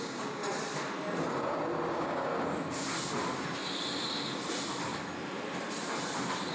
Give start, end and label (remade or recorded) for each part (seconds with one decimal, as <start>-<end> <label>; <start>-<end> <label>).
0.0-0.4 remade; 0.4-1.9 recorded; 1.9-2.3 remade; 2.3-6.5 recorded